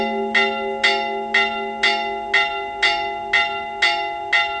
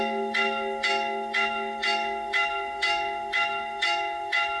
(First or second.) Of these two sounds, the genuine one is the first